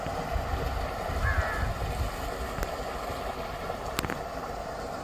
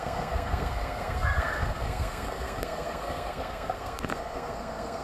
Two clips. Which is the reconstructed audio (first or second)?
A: second